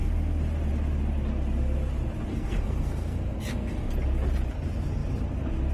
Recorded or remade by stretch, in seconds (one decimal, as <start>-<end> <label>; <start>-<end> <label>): 0.0-2.3 recorded; 2.3-3.9 remade; 3.9-5.7 recorded